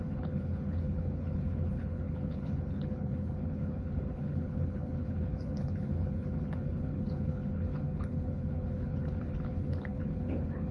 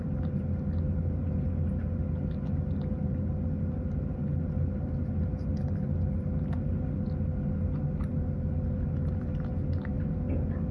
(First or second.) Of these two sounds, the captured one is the second